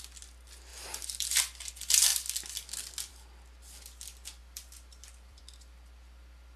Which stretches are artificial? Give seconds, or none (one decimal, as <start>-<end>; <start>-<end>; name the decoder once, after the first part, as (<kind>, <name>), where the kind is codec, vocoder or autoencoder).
0.7-1.7 (vocoder, BigVGAN v2); 4.4-5.4